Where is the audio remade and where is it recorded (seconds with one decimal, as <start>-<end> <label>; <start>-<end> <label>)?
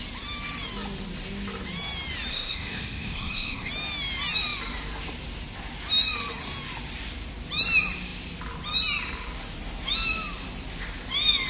0.0-2.3 recorded; 2.3-3.7 remade; 3.7-11.5 recorded